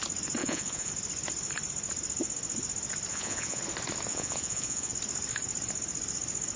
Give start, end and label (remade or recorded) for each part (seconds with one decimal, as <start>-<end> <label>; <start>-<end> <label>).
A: 0.0-0.4 recorded; 0.4-0.9 remade; 0.9-3.1 recorded; 3.1-3.6 remade; 3.6-4.1 recorded; 4.1-4.9 remade; 4.9-6.6 recorded